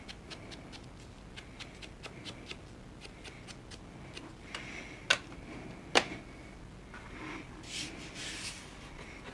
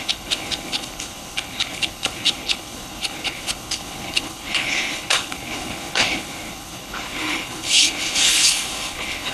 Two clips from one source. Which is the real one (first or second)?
first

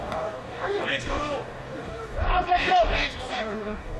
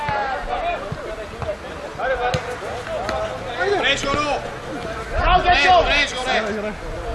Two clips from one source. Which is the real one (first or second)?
second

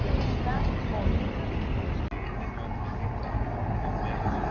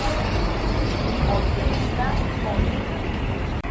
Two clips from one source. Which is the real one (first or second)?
first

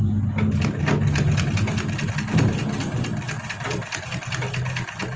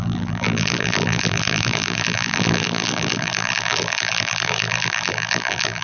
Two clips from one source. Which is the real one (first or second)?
first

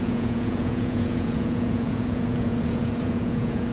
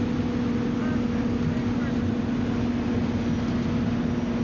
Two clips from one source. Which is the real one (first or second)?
second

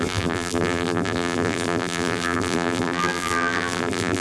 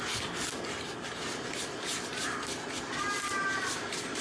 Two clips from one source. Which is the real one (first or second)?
second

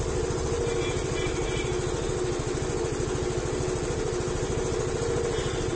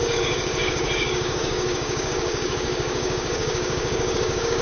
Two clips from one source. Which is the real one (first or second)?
first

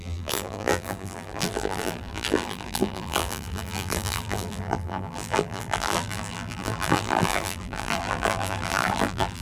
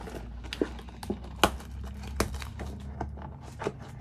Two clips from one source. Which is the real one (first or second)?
second